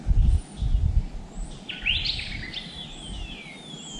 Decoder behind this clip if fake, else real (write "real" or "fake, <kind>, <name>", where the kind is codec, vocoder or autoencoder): real